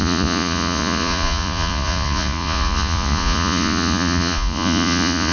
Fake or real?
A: fake